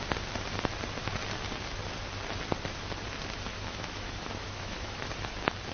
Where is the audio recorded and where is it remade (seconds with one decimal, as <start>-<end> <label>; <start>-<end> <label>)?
0.0-3.5 recorded; 3.5-5.1 remade; 5.1-5.7 recorded